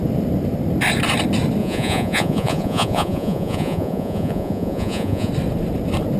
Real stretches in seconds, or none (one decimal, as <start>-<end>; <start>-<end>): 0.0-1.6; 5.3-6.2